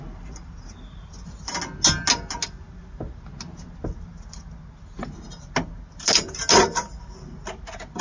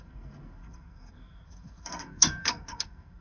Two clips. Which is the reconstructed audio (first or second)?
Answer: second